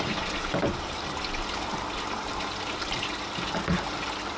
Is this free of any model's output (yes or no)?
yes